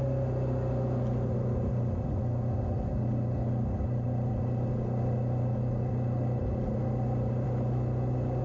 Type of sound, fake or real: real